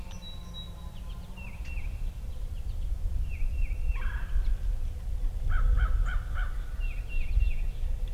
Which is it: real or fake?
real